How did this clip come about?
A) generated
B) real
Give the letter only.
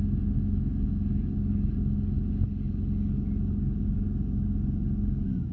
B